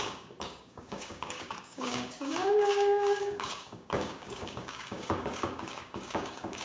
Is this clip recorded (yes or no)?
no